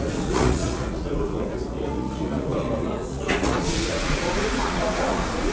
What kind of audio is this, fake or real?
fake